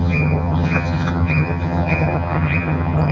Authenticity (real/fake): fake